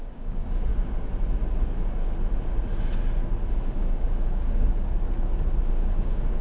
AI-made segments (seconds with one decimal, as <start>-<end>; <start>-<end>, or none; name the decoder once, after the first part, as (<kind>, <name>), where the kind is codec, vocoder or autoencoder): 0.0-0.7 (codec, DAC); 3.5-4.9; 5.7-6.4